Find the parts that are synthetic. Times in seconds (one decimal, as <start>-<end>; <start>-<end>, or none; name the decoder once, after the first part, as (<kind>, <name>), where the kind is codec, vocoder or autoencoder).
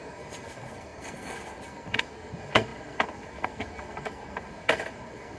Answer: 0.0-5.4 (codec, SNAC)